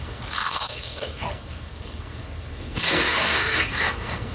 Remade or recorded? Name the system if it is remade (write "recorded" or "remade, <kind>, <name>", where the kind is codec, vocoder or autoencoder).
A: remade, codec, SNAC